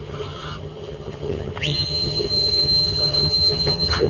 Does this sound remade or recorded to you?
remade